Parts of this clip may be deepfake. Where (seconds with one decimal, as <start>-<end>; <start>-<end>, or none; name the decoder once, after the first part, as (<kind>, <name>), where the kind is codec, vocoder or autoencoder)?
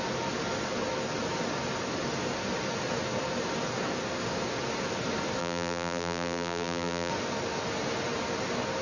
5.4-7.1 (vocoder, BigVGAN v2)